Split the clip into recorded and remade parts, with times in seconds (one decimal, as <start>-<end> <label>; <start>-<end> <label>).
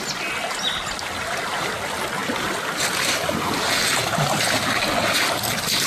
0.0-5.9 recorded